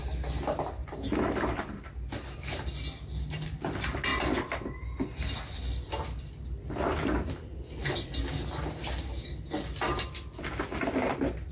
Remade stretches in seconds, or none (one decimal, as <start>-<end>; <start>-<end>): none

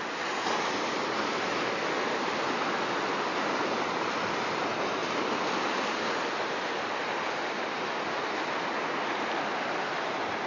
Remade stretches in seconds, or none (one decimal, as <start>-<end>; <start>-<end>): none

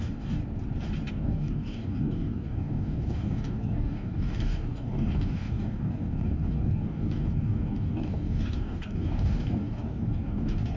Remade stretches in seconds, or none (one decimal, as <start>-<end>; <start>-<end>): 0.0-0.4; 1.1-10.8

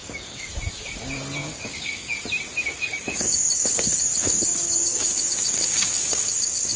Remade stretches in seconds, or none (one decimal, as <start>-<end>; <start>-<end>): 0.0-0.5; 1.4-2.2; 2.7-6.8

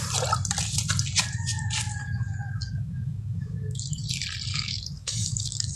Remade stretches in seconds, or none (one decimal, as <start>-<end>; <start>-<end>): 2.0-4.0; 4.5-5.8

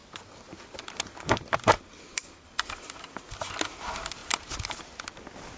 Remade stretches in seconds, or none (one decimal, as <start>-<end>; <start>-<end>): none

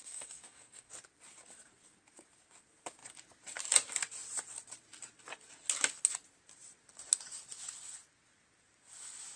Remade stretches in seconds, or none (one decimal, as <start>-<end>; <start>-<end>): 0.0-0.9